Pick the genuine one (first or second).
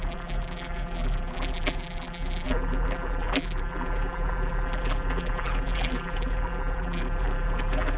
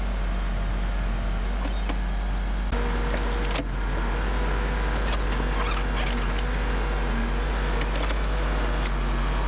second